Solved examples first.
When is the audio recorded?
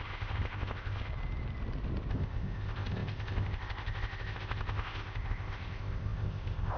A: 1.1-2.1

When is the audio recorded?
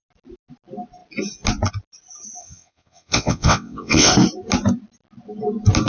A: 0.0-2.4; 4.1-5.9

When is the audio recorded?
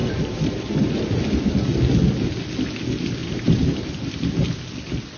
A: 0.6-3.2; 4.1-5.2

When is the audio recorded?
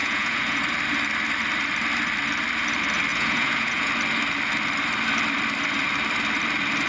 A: 0.6-3.1; 3.9-6.9